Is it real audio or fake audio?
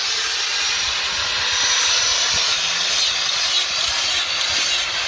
real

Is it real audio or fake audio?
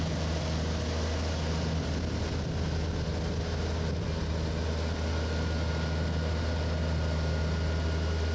real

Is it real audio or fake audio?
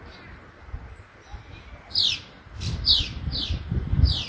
real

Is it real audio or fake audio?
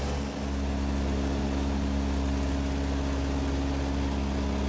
real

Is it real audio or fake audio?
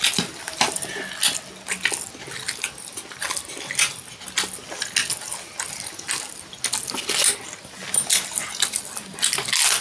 real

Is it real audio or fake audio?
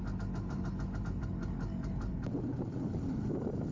real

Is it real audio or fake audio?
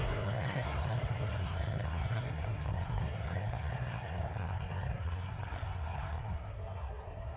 fake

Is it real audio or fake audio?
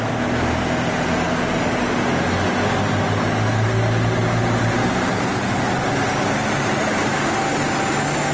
real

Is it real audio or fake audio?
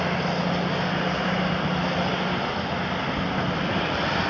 real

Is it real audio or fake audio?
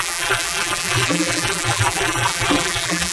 fake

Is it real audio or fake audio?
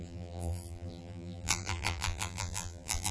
fake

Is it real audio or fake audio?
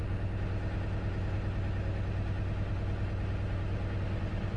real